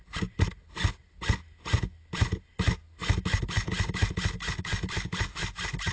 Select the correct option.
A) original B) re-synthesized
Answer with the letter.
A